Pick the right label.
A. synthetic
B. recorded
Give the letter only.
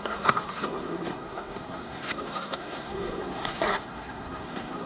A